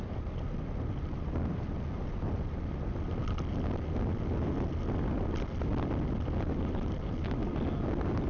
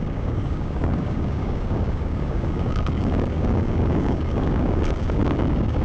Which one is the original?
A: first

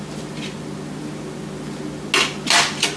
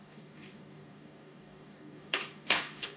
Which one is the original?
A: first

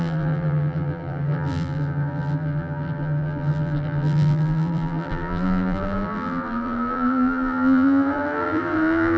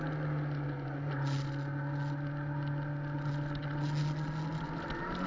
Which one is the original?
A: second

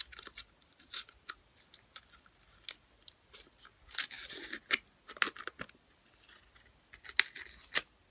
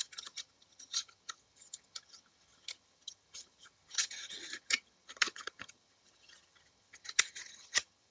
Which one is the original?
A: first